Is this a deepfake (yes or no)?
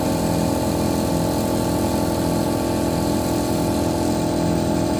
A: no